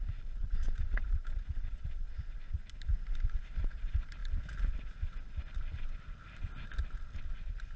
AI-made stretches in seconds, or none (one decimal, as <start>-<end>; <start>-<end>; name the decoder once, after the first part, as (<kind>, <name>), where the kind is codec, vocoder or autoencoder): 0.4-1.9 (vocoder, Vocos)